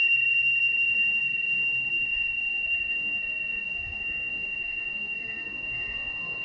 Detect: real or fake fake